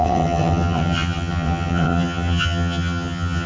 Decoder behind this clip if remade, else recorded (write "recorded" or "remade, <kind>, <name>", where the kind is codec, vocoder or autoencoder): remade, vocoder, HiFi-GAN